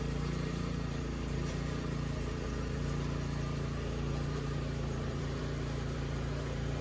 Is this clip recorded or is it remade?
remade